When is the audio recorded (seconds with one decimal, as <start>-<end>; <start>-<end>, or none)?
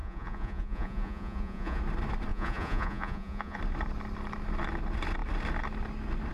1.8-2.3; 3.6-6.3